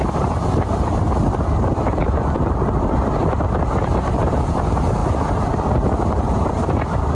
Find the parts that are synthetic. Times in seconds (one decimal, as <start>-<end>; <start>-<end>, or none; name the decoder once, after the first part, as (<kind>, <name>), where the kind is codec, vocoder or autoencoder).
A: 0.0-1.2 (vocoder, BigVGAN v2); 3.9-5.0; 6.1-7.1